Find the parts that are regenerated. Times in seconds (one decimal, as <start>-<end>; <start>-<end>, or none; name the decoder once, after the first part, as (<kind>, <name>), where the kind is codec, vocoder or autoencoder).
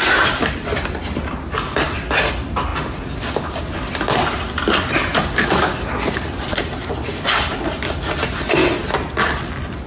none